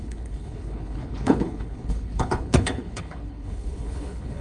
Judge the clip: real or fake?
fake